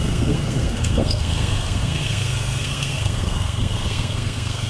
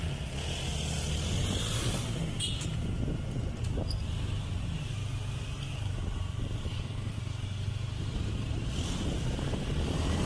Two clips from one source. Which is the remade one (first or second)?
first